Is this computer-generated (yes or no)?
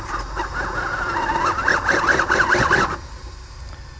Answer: no